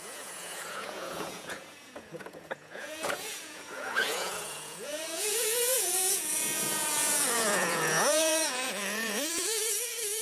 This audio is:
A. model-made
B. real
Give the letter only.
A